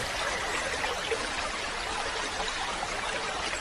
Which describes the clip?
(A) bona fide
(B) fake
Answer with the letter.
B